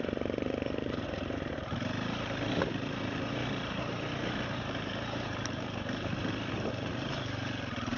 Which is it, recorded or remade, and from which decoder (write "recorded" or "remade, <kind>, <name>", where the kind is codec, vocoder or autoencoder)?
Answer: remade, vocoder, BigVGAN v2